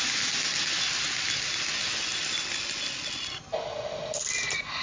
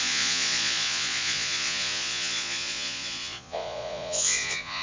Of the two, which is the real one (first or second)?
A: first